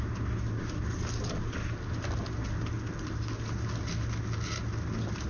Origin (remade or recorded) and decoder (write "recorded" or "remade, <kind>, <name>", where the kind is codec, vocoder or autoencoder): recorded